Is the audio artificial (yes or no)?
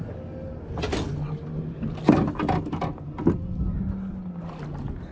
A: no